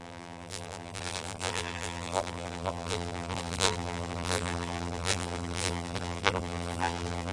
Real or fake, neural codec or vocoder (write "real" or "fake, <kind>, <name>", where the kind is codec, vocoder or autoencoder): fake, vocoder, BigVGAN v2